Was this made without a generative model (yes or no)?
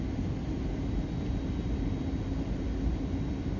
yes